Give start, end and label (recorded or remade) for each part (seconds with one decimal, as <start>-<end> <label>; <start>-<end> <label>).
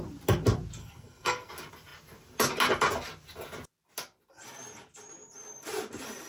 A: 0.0-0.8 recorded; 0.8-1.5 remade; 1.5-6.3 recorded